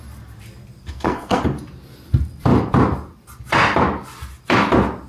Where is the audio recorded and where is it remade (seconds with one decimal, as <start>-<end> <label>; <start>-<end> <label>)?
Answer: 0.0-0.8 recorded; 0.8-1.4 remade; 1.4-5.1 recorded